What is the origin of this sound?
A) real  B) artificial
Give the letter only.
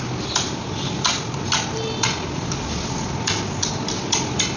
A